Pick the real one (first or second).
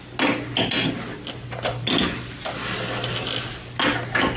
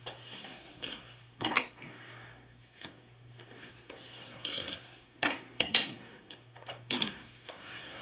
first